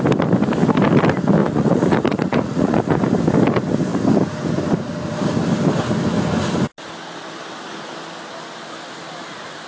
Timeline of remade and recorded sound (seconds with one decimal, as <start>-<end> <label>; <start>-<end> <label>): 0.0-1.4 recorded; 1.4-3.0 remade; 3.0-9.7 recorded